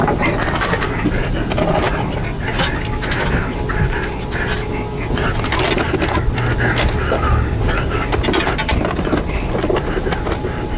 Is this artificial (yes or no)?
no